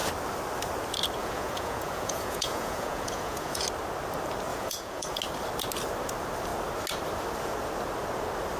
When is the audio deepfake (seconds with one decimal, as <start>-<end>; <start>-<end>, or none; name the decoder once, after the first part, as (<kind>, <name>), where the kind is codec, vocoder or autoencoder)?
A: 1.2-3.6 (vocoder, Vocos); 4.5-5.2

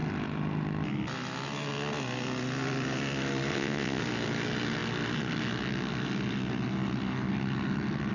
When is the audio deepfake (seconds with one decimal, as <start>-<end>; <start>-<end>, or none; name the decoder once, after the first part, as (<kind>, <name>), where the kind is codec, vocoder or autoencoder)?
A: 3.5-4.0 (vocoder, WaveNeXt)

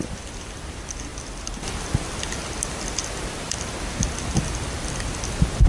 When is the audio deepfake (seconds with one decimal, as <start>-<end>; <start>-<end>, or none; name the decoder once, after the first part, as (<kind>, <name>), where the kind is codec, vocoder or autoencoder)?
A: none

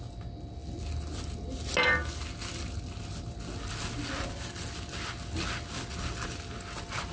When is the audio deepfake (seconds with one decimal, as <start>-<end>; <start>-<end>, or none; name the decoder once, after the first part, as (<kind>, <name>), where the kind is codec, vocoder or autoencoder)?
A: none

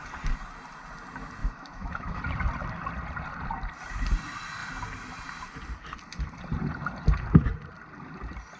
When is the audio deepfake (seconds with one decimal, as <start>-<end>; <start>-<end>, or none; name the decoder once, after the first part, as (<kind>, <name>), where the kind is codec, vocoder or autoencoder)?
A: 1.4-2.2 (autoencoder, DAC-VAE)

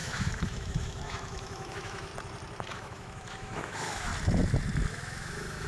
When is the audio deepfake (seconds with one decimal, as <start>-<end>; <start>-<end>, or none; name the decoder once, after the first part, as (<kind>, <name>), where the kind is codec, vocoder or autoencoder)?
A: 0.0-2.1 (autoencoder, DAC-VAE); 2.7-4.1; 4.9-5.7

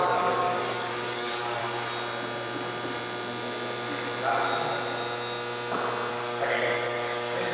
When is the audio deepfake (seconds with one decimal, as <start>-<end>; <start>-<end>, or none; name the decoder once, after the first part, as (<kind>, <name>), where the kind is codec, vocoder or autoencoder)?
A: 0.0-1.6 (codec, DAC); 6.1-7.5

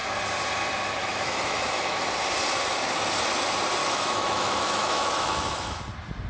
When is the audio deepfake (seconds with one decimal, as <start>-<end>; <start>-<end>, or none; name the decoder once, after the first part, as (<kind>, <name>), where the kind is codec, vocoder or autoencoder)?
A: 1.0-2.0 (autoencoder, DAC-VAE); 3.8-5.8